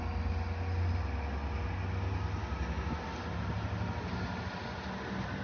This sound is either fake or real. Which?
real